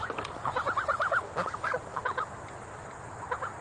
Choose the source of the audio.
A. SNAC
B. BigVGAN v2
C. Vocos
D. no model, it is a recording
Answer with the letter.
D